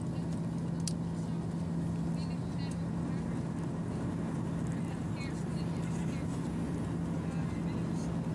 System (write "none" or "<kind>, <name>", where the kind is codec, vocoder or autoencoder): none